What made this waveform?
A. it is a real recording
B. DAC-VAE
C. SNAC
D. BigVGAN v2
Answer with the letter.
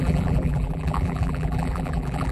D